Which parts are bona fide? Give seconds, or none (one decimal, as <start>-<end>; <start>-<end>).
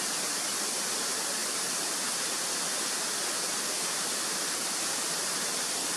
0.0-6.0